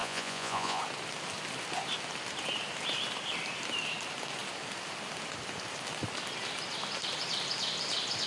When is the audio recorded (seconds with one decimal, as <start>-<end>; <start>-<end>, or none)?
0.8-8.3

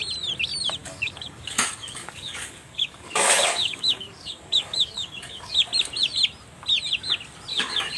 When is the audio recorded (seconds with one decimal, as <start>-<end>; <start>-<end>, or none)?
0.0-0.8; 5.6-7.5

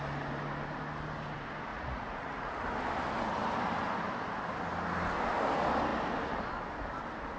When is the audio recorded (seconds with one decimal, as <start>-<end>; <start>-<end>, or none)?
0.0-1.7; 2.5-7.4

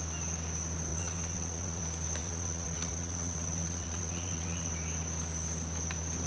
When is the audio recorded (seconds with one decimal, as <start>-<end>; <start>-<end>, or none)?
0.0-0.9; 1.8-2.2; 4.7-6.3

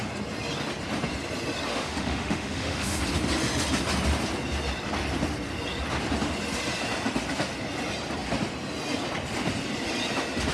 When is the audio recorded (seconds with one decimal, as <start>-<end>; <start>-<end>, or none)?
0.0-1.7; 3.0-10.5

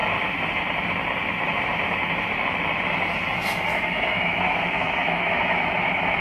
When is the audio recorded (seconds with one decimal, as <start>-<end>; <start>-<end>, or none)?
0.0-3.7

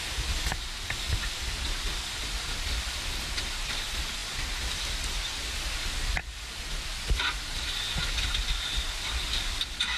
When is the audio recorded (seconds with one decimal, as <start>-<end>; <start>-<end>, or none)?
0.0-10.0